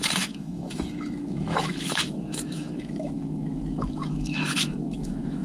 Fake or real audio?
fake